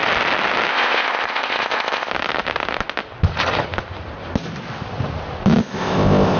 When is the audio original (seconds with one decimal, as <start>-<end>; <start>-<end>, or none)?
0.0-0.7; 2.1-5.6